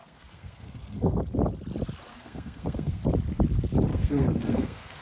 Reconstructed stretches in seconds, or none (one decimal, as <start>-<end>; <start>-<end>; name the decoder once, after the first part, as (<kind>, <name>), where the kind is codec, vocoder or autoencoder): 0.0-1.2 (codec, SNAC); 2.1-3.0; 3.9-5.0